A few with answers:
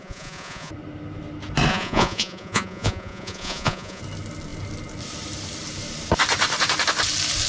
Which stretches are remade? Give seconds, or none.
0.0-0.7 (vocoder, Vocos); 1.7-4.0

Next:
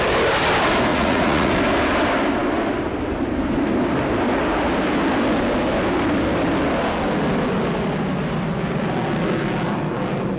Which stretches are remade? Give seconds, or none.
0.9-1.5 (vocoder, Vocos)

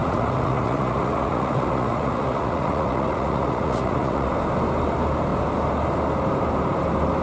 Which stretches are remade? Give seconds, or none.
0.0-4.3 (vocoder, Vocos)

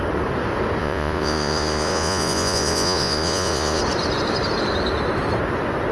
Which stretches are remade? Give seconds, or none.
0.8-3.8 (vocoder, Vocos)

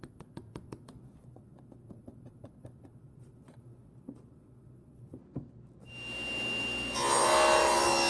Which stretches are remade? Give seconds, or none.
0.0-5.2 (vocoder, Vocos)

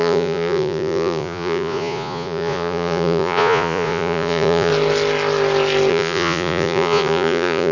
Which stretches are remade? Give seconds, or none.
0.0-4.7 (vocoder, Vocos); 5.9-7.7

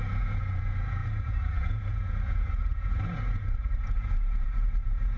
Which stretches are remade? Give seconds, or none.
0.0-5.2 (vocoder, Vocos)